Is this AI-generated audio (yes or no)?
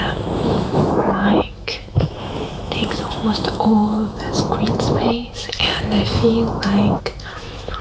yes